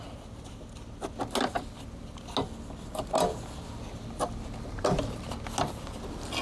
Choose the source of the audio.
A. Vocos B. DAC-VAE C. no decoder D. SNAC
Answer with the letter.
C